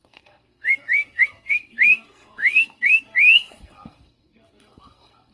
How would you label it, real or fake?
fake